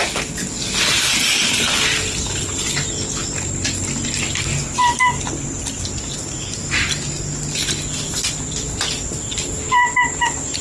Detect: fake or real real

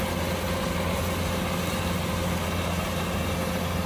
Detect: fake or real real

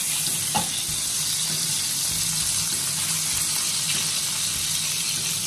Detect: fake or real real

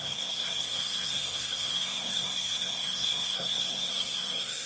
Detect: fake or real fake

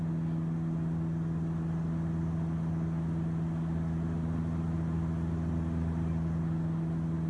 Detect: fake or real real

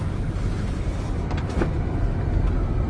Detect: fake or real real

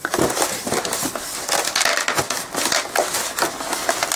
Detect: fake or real real